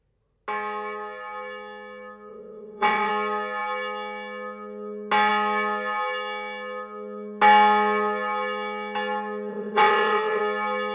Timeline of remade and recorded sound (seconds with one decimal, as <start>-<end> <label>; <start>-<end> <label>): 0.0-2.3 recorded; 2.3-3.1 remade; 3.1-9.5 recorded; 9.5-10.4 remade; 10.4-10.9 recorded